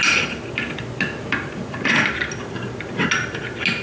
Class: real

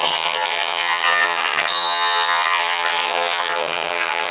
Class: fake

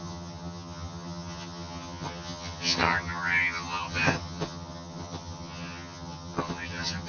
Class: fake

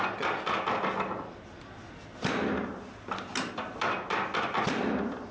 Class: real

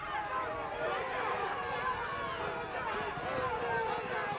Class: real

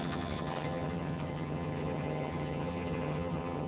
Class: fake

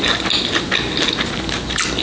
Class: real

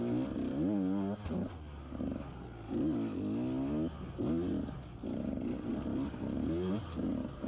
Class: real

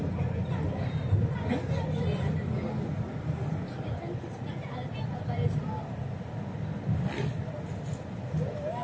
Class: real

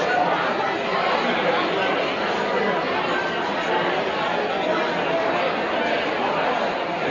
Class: real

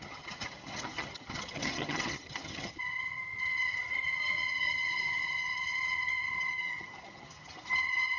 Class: fake